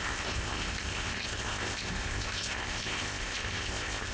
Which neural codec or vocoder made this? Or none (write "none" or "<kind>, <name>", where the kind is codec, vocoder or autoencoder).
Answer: codec, ZipCodec